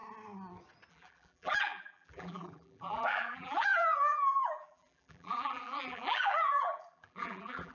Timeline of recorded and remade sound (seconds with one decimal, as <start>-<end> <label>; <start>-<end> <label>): 0.0-0.9 recorded; 0.9-7.7 remade